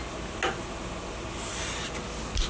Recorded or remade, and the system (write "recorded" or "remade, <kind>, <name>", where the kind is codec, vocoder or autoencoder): recorded